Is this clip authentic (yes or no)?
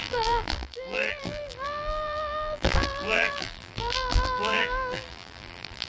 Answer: no